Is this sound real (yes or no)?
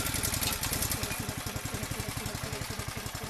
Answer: yes